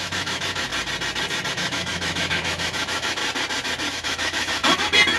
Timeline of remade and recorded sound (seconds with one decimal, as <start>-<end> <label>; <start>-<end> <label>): 0.0-0.7 remade; 0.7-1.5 recorded; 1.5-3.2 remade; 3.2-3.9 recorded; 3.9-4.6 remade; 4.6-5.2 recorded